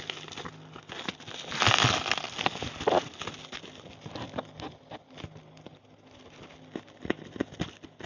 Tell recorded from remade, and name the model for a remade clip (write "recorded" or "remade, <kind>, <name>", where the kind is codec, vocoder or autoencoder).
recorded